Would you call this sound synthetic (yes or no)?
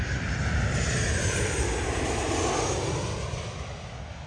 no